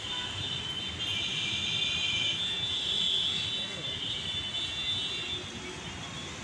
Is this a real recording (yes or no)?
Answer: yes